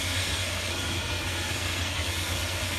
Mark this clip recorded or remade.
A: remade